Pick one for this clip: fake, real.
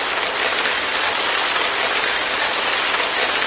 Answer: real